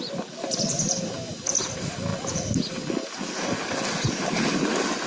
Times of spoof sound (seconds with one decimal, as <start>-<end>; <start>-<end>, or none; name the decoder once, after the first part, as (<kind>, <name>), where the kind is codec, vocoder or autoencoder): none